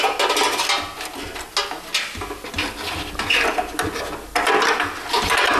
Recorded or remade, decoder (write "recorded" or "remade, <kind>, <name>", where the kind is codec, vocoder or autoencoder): recorded